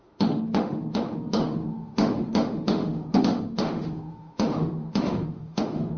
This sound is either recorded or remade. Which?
remade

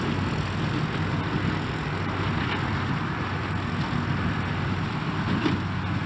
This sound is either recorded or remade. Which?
recorded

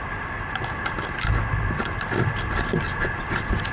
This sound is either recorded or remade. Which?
recorded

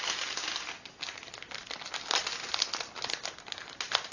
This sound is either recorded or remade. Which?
recorded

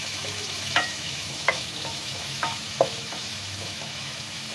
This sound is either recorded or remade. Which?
remade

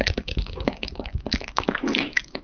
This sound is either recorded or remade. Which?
remade